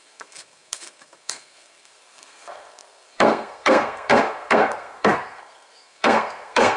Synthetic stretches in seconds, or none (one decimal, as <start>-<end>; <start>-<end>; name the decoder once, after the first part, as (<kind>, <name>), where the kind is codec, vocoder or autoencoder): 0.0-6.8 (codec, SNAC)

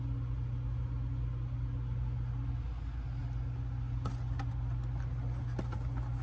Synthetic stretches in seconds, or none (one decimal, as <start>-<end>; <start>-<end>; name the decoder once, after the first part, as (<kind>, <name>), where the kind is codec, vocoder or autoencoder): none